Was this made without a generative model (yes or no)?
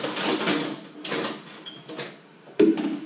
no